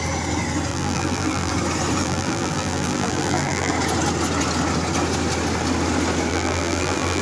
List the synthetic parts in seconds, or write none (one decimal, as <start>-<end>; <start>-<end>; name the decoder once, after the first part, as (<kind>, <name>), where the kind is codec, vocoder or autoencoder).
0.7-1.5 (vocoder, BigVGAN v2); 2.0-3.7; 6.3-7.2

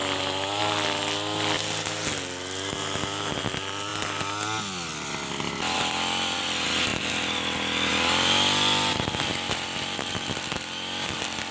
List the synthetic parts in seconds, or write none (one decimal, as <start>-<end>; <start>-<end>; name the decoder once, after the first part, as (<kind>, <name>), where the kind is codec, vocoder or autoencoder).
none

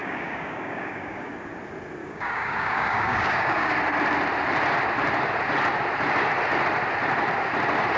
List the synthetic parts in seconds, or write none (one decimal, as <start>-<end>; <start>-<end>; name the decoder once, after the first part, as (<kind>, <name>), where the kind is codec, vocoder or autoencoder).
0.0-1.3 (codec, DAC); 2.0-3.7

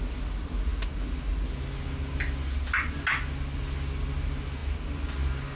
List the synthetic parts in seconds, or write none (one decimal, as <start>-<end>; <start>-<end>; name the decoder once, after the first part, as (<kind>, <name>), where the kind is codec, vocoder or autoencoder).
none

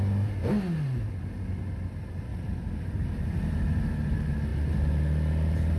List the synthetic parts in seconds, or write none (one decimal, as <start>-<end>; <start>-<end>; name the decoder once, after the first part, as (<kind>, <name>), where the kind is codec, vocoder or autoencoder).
2.3-3.6 (vocoder, BigVGAN v2)